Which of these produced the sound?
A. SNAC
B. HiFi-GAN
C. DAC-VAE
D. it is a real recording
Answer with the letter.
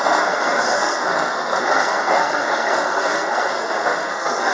A